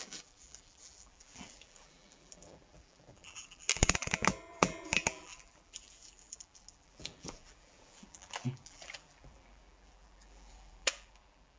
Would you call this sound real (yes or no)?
no